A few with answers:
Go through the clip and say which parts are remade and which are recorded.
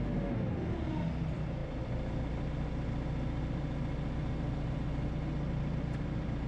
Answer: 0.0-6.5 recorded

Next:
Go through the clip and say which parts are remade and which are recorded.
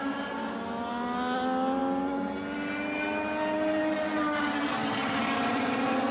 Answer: 0.0-6.1 recorded